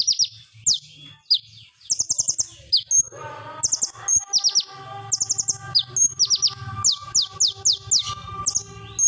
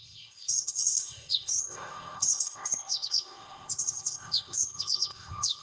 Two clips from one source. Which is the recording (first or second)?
first